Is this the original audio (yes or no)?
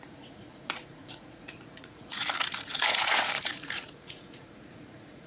no